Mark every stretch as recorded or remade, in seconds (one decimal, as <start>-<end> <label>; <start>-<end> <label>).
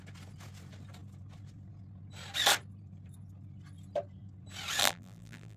0.0-4.8 recorded; 4.8-5.6 remade